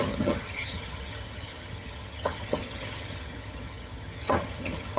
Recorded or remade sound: remade